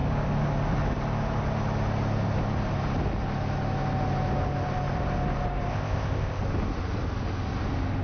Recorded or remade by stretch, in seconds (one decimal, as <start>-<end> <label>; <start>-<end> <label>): 0.0-5.7 recorded; 5.7-6.4 remade; 6.4-8.0 recorded